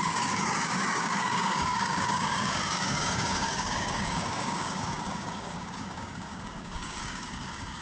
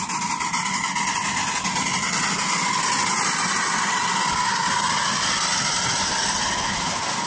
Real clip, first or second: second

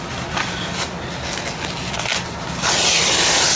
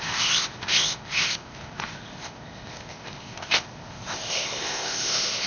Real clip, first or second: first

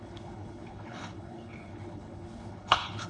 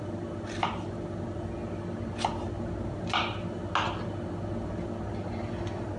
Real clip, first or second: second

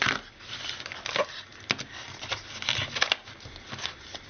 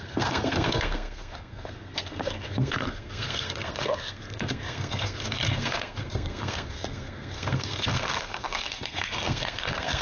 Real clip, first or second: first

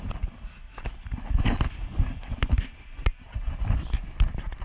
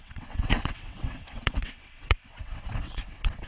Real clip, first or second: first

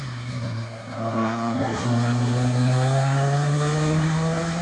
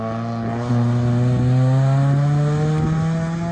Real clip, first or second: second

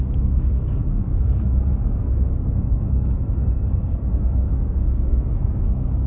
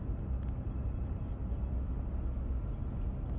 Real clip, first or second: second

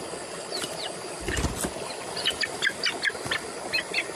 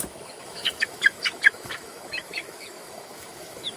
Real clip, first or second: first